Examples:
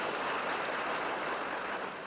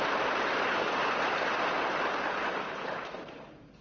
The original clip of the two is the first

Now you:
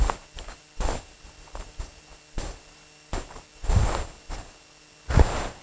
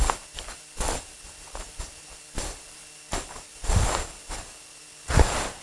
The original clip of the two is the first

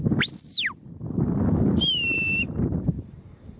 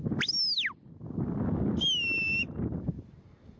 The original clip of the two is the second